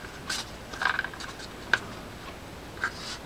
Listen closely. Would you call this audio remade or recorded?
recorded